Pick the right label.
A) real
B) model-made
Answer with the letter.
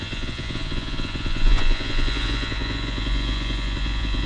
B